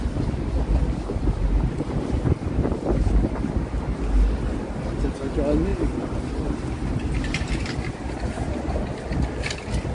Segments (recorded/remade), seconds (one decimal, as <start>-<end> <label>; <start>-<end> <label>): 0.0-9.9 recorded